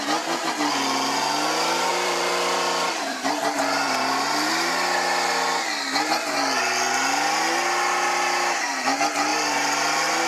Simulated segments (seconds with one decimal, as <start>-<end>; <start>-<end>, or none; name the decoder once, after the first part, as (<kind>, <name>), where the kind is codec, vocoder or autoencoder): 1.9-4.5 (vocoder, BigVGAN v2); 9.3-10.3

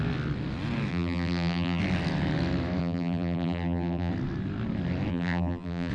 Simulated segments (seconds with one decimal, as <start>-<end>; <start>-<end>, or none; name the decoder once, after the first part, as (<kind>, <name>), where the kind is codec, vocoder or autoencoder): 0.9-1.8 (vocoder, BigVGAN v2); 2.8-4.1; 5.1-5.9

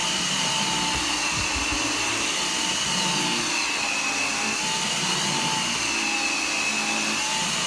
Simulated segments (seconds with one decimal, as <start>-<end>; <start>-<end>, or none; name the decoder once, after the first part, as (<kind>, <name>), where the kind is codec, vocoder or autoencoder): 0.0-3.2 (vocoder, BigVGAN v2)

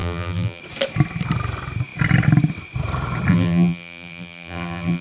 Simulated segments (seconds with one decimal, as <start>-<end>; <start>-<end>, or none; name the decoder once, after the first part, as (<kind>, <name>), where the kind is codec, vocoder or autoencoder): 0.0-0.6 (vocoder, BigVGAN v2); 3.3-5.0

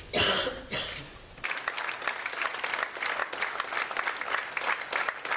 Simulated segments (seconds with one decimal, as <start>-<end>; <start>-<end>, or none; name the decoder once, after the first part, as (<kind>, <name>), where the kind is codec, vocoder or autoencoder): none